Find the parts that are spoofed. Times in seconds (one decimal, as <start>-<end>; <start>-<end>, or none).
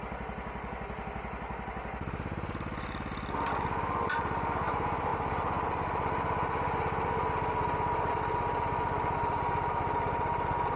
none